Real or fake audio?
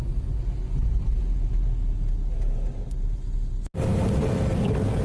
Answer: real